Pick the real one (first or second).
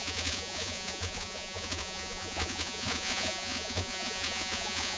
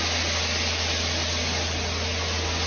second